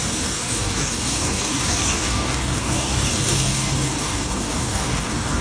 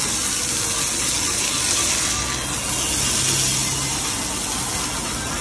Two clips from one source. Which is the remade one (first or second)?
first